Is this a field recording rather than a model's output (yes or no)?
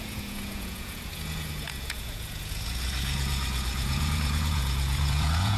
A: no